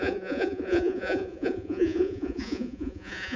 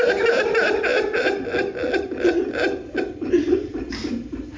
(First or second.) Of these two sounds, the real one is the second